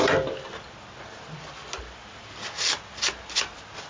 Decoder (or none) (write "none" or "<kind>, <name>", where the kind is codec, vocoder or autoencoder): none